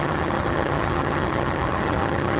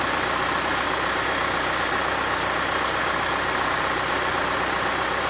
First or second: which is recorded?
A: second